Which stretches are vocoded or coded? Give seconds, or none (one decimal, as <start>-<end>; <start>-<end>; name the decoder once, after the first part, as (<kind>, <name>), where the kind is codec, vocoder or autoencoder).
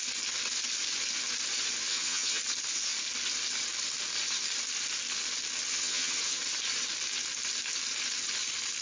1.9-2.4 (vocoder, HiFi-GAN); 5.7-6.4